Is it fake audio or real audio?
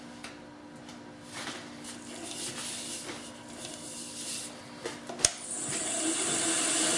real